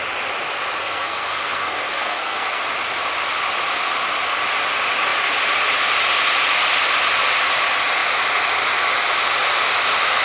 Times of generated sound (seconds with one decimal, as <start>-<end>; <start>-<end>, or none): 0.8-2.6